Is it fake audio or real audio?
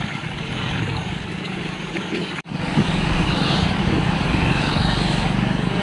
fake